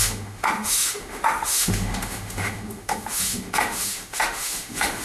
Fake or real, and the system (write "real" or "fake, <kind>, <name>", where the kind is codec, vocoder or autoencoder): fake, autoencoder, DAC-VAE